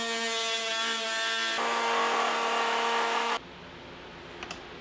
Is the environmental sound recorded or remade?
recorded